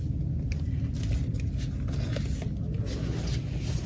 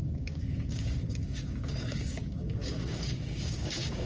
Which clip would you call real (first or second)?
first